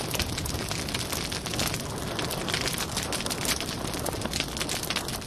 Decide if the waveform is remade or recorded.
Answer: recorded